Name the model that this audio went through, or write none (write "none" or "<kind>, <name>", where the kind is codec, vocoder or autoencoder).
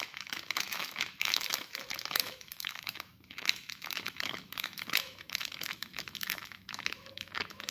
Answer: autoencoder, DAC-VAE